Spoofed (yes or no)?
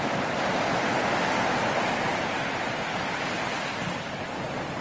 no